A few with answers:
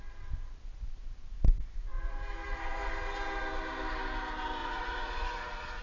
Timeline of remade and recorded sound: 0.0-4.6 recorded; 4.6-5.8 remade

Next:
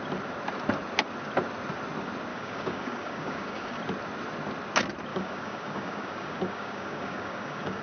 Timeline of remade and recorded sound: 0.0-2.3 recorded; 2.3-3.8 remade; 3.8-5.1 recorded; 5.1-7.8 remade

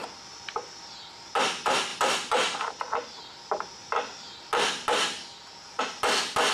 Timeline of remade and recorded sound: 0.0-6.5 recorded

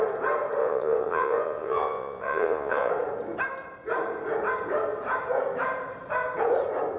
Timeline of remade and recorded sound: 0.0-0.6 recorded; 0.6-2.9 remade; 2.9-7.0 recorded

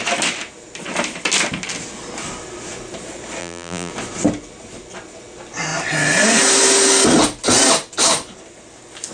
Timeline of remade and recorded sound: 0.0-3.4 recorded; 3.4-3.9 remade; 3.9-9.1 recorded

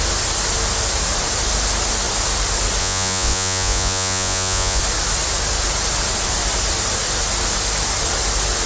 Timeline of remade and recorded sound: 0.0-2.8 recorded; 2.8-4.8 remade; 4.8-8.7 recorded

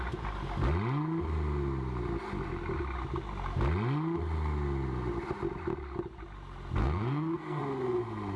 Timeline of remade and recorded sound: 0.0-6.8 recorded; 6.8-7.6 remade; 7.6-8.4 recorded